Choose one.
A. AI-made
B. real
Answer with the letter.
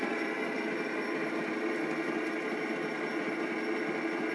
B